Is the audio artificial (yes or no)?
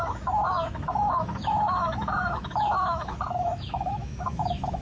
yes